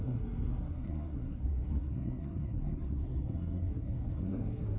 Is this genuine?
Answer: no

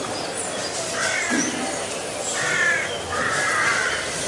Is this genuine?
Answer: yes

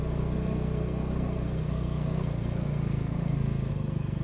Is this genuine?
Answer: no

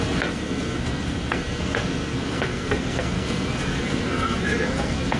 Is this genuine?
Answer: no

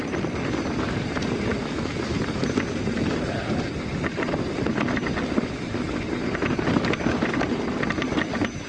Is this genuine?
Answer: yes